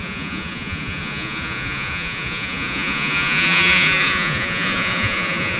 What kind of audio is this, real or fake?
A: fake